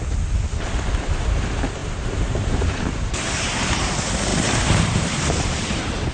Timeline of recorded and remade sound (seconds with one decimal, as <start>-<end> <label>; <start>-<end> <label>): 0.0-1.8 recorded; 1.8-2.8 remade; 2.8-4.3 recorded; 4.3-6.1 remade